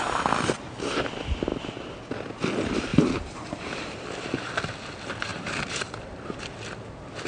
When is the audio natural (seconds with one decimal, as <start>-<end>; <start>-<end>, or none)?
0.0-2.9; 4.0-5.3; 6.5-7.3